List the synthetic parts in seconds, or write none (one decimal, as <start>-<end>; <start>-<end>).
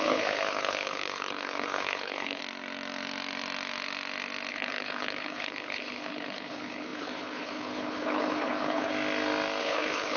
0.0-2.4; 4.5-8.9; 9.6-10.2